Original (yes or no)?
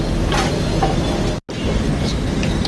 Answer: yes